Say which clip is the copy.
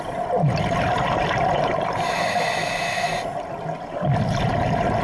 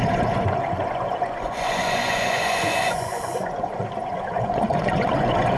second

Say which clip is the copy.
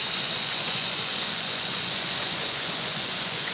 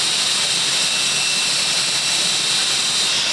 first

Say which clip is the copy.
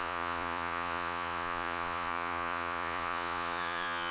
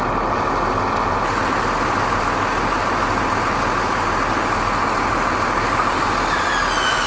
first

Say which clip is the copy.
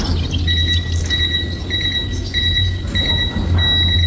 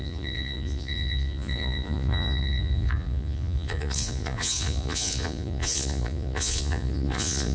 second